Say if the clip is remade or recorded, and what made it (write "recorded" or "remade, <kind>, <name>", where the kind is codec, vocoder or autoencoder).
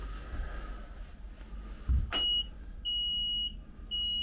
recorded